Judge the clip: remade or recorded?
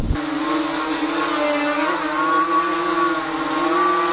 recorded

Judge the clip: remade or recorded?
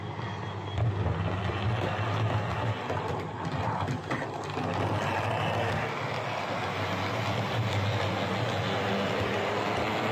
recorded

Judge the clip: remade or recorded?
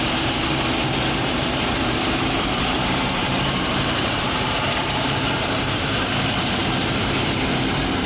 remade